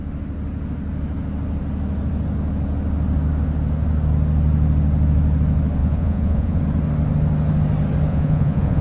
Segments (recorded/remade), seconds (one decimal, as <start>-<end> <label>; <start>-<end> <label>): 0.0-5.8 recorded; 5.8-6.6 remade; 6.6-8.1 recorded; 8.1-8.8 remade